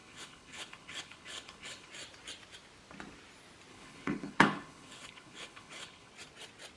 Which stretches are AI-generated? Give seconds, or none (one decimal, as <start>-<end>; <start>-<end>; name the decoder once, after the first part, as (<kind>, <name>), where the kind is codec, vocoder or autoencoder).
0.0-1.9 (codec, HILCodec); 3.7-6.1